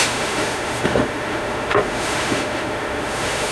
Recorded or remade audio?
remade